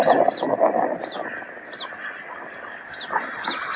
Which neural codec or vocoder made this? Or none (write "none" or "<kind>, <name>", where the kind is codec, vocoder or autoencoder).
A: none